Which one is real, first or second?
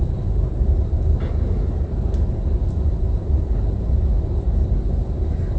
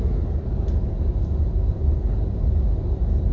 second